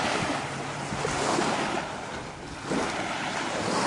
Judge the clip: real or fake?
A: real